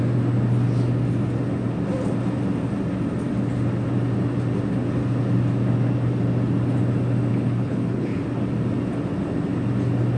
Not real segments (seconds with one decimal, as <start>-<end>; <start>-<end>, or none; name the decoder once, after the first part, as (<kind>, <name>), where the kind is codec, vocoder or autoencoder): 7.3-8.2 (codec, HILCodec)